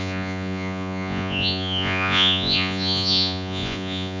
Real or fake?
fake